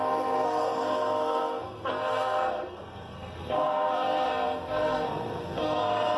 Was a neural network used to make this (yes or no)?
yes